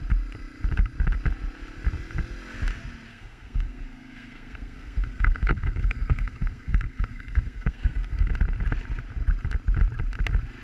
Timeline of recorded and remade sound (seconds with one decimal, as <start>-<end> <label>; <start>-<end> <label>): 0.0-3.1 recorded; 3.1-8.3 remade; 8.3-10.6 recorded

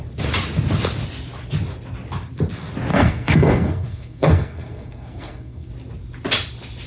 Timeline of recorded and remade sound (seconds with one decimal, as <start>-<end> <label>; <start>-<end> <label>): 0.0-2.9 recorded; 2.9-5.7 remade; 5.7-6.9 recorded

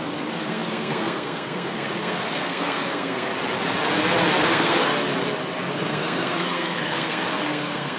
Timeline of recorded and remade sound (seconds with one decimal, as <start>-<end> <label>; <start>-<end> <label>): 0.0-3.3 remade; 3.3-4.4 recorded; 4.4-4.9 remade; 4.9-5.7 recorded; 5.7-8.0 remade